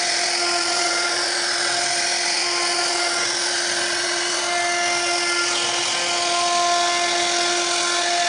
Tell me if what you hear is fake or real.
real